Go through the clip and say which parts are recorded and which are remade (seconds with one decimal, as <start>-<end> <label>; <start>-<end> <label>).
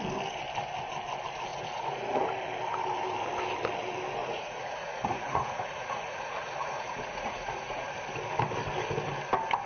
0.0-1.5 recorded; 1.5-2.2 remade; 2.2-4.2 recorded; 4.2-7.9 remade; 7.9-9.7 recorded